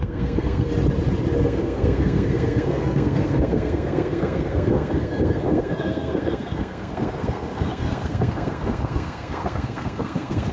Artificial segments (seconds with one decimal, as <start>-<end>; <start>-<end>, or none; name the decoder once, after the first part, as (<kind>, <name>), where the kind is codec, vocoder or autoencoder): 0.0-0.7 (codec, SNAC); 1.4-10.5